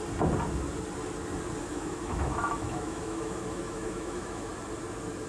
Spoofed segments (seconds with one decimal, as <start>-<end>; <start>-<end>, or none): 1.7-4.5